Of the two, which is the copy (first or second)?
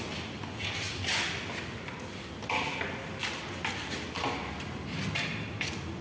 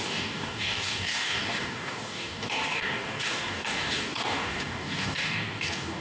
second